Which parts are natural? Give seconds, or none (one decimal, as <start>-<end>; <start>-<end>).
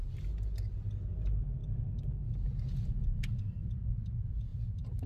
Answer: 0.0-4.5